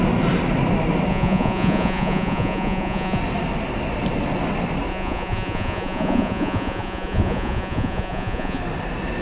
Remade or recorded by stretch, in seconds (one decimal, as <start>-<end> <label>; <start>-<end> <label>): 0.0-1.1 recorded; 1.1-3.2 remade; 3.2-4.9 recorded; 4.9-8.6 remade; 8.6-9.2 recorded